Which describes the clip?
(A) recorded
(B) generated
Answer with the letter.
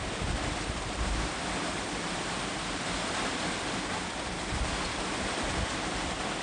A